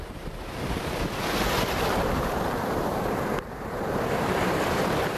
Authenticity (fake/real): fake